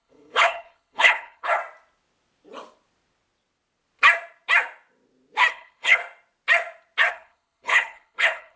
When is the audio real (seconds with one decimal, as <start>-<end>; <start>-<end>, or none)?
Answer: 1.6-5.5; 6.0-7.1